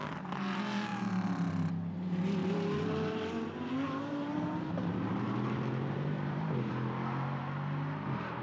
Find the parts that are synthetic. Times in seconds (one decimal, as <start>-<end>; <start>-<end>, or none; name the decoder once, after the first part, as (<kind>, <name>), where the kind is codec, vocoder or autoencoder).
0.9-1.5 (vocoder, BigVGAN v2); 2.4-6.7